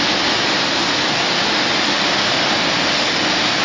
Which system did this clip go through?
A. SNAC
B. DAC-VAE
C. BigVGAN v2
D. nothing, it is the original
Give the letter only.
D